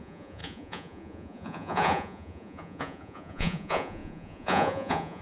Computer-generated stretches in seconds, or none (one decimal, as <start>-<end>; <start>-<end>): 0.0-5.2